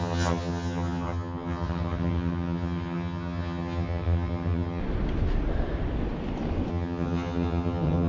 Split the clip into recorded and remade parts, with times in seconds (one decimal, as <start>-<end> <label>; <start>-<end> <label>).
0.0-4.8 remade; 4.8-6.7 recorded; 6.7-8.1 remade